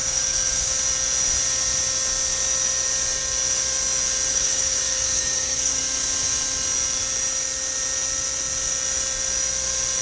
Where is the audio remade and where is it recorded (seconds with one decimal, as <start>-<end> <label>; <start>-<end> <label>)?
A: 0.0-0.7 remade; 0.7-4.3 recorded; 4.3-5.8 remade; 5.8-10.0 recorded